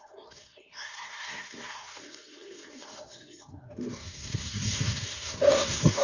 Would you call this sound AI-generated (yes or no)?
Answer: yes